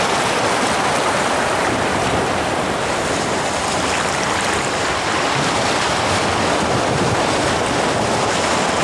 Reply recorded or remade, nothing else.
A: remade